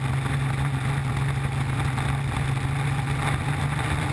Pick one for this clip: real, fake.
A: real